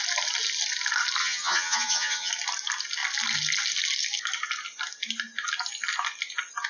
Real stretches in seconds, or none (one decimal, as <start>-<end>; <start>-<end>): 0.0-1.2; 2.3-6.7